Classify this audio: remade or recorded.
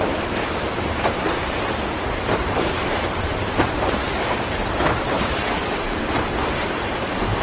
remade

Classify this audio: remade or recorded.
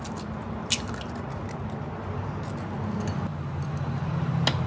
recorded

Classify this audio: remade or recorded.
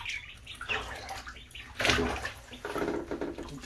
recorded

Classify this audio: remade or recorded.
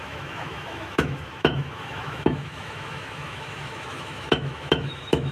remade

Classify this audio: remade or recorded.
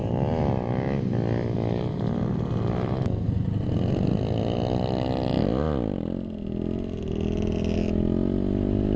recorded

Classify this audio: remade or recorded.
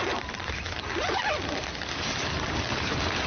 recorded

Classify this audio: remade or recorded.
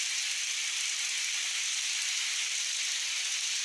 recorded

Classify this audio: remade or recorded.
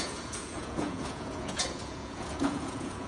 remade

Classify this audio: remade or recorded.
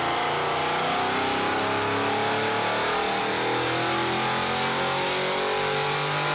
recorded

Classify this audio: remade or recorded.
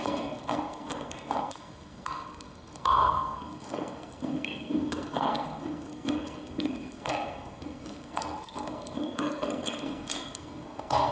remade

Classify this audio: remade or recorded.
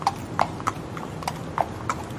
recorded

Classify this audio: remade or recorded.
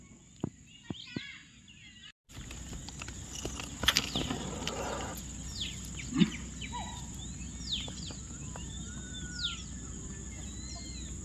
recorded